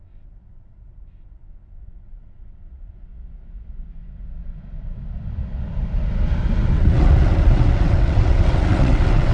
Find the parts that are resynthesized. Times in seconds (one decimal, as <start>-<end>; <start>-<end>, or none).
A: 0.0-3.1; 6.7-9.3